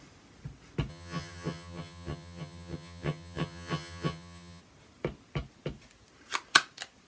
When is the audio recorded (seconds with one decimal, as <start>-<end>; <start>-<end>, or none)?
0.0-0.9; 4.6-7.1